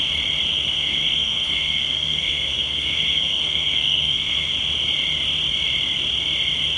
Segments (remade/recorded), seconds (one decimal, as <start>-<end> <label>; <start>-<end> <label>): 0.0-0.5 recorded; 0.5-4.5 remade; 4.5-6.8 recorded